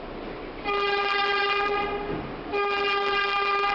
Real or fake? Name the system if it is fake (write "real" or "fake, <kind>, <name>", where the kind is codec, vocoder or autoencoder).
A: real